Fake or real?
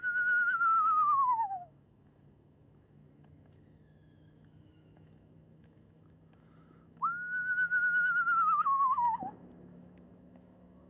fake